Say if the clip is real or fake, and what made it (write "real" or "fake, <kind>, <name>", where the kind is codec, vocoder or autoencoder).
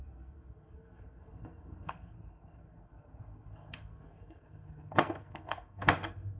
fake, codec, SNAC